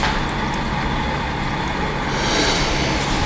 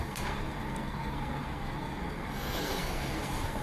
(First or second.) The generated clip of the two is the second